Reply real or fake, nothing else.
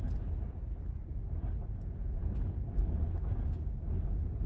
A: real